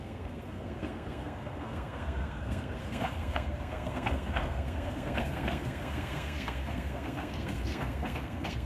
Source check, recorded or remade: remade